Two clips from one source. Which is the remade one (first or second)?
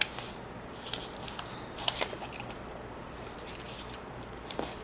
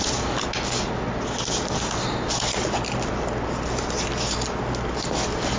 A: first